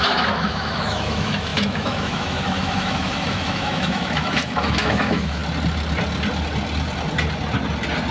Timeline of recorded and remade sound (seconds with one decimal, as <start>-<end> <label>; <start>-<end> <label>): 0.0-5.4 remade; 5.4-8.1 recorded

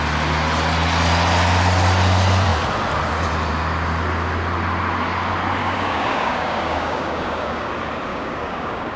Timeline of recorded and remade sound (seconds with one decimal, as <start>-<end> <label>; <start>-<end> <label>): 0.0-5.6 recorded; 5.6-7.7 remade; 7.7-8.1 recorded; 8.1-9.0 remade